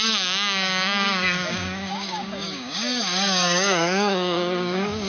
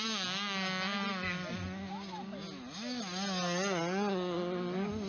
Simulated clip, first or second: first